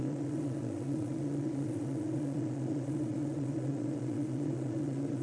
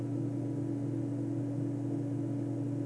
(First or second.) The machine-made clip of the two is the first